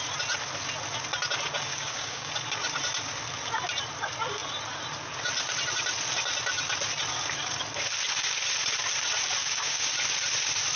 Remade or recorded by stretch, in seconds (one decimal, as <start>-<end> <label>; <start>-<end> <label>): 0.0-1.7 recorded; 1.7-2.3 remade; 2.3-9.4 recorded; 9.4-9.9 remade; 9.9-10.8 recorded